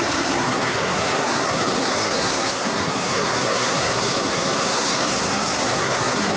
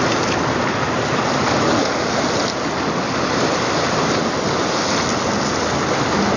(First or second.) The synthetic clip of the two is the first